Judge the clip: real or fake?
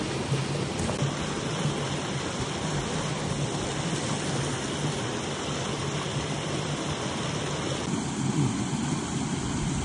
real